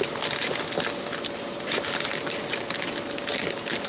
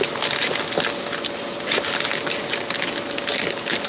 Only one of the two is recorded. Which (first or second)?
second